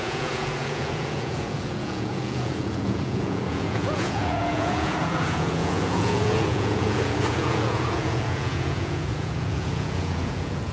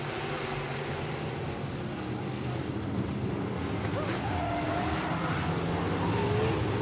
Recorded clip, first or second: second